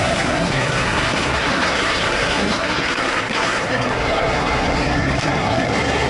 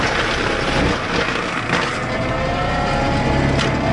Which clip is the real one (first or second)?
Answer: second